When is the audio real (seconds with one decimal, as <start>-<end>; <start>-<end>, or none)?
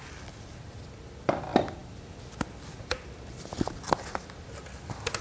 0.0-5.2